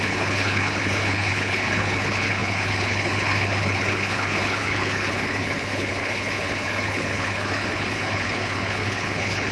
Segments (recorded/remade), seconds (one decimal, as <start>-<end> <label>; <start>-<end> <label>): 0.0-9.5 remade